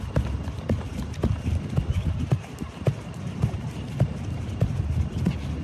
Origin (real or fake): real